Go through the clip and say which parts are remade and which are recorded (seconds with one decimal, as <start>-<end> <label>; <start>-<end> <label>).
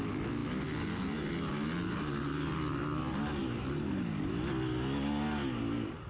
0.0-6.1 recorded